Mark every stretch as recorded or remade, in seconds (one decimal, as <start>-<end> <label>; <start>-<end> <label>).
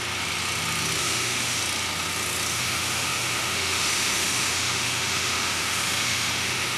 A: 0.0-1.0 recorded; 1.0-1.6 remade; 1.6-2.5 recorded; 2.5-6.8 remade